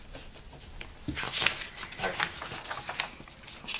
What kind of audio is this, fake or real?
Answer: real